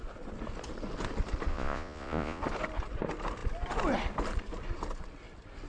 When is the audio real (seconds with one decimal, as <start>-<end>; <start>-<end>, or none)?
0.0-1.5; 2.4-5.7